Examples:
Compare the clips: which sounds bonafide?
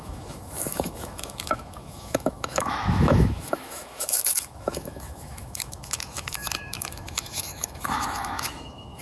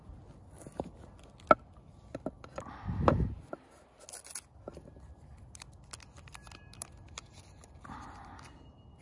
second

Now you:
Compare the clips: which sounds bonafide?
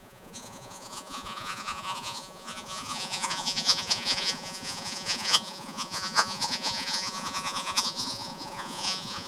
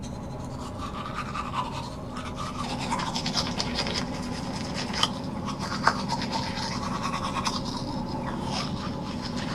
second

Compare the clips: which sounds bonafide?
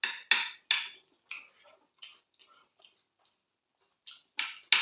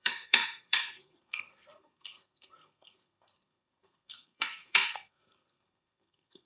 first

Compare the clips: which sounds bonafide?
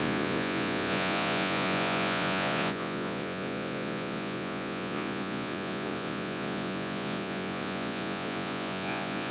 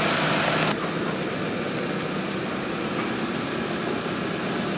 second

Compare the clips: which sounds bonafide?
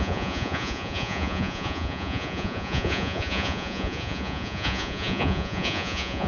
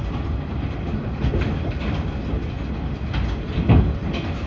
second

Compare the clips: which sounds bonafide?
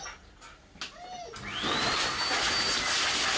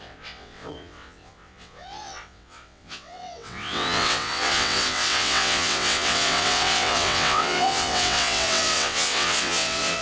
first